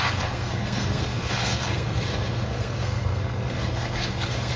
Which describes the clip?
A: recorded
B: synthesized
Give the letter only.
B